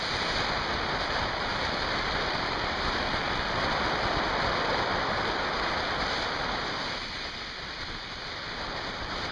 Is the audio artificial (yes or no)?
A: yes